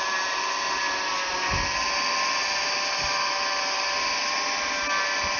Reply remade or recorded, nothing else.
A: recorded